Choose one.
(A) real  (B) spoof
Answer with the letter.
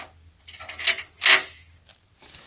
A